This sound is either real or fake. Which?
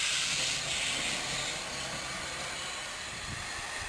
real